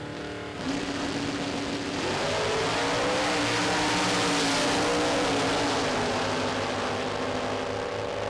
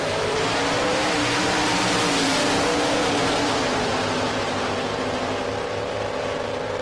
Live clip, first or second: first